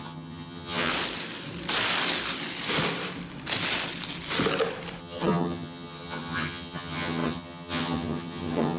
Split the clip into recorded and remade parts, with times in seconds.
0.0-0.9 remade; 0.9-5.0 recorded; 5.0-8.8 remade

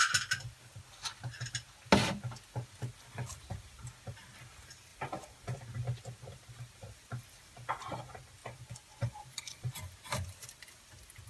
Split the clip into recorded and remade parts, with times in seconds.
0.0-8.4 recorded; 8.4-9.6 remade; 9.6-11.3 recorded

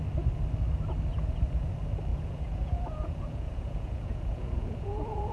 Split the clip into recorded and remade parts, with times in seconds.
0.0-1.1 recorded; 1.1-1.7 remade; 1.7-2.1 recorded; 2.1-5.3 remade

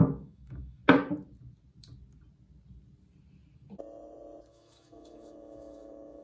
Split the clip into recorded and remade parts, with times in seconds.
0.0-0.8 remade; 0.8-4.5 recorded; 4.5-6.2 remade

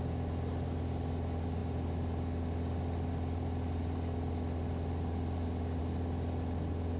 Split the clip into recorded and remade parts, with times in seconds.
0.0-7.0 recorded